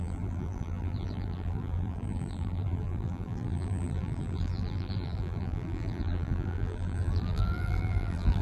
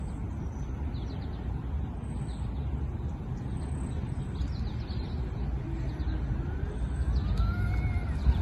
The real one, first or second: second